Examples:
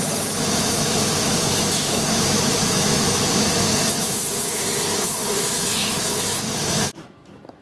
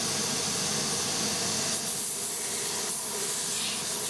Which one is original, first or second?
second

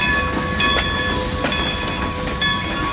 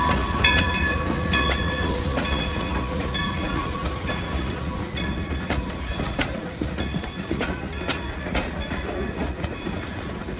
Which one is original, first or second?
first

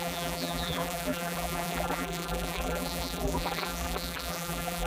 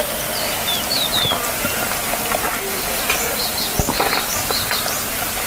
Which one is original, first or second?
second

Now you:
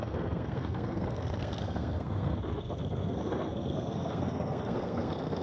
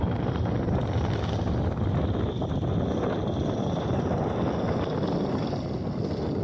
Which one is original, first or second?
second